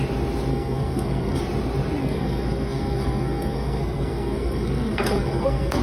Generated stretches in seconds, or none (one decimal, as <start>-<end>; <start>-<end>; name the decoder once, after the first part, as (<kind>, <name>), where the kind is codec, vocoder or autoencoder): 0.5-1.4 (codec, SNAC); 2.0-5.8